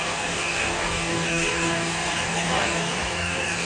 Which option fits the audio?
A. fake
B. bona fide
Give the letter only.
A